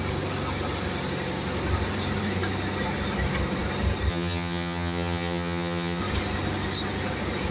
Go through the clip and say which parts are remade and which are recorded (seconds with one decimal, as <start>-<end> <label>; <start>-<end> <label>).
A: 0.0-4.1 recorded; 4.1-6.0 remade; 6.0-7.5 recorded